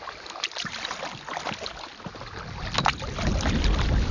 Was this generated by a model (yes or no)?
no